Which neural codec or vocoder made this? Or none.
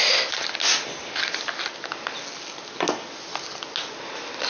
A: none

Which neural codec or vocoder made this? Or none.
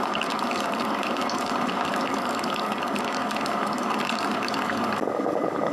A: codec, DAC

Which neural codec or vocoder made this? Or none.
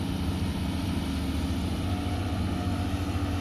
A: none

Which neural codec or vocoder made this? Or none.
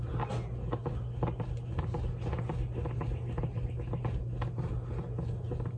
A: none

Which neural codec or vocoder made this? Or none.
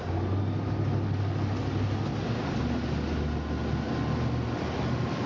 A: none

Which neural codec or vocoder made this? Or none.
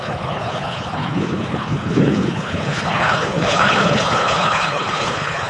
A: codec, HILCodec